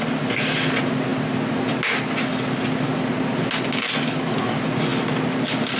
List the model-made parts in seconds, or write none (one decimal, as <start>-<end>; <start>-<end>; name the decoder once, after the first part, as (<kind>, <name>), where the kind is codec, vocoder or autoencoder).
none